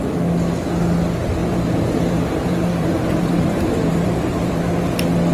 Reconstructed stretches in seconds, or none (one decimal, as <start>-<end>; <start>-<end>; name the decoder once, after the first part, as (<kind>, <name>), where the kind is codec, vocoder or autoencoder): 1.4-4.6 (vocoder, BigVGAN v2)